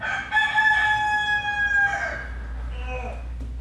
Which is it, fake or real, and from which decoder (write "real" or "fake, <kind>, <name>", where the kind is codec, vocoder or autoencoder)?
real